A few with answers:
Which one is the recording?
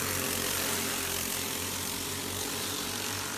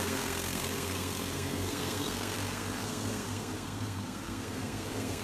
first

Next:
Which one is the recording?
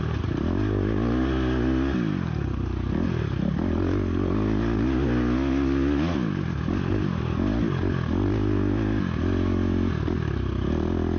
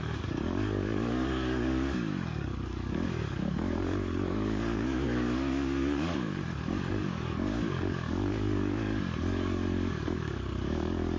first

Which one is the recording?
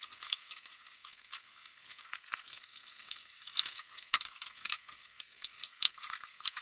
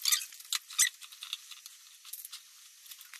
second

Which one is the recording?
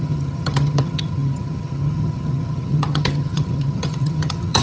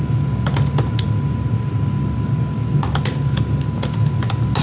second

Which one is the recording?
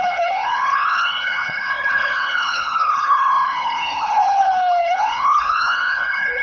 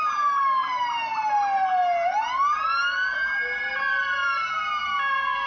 second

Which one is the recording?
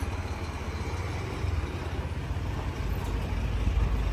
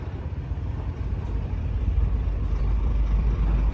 first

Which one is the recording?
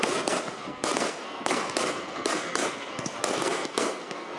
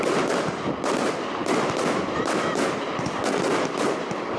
second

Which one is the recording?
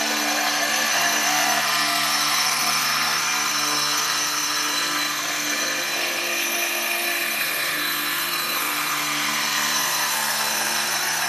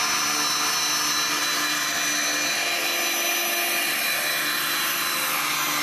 second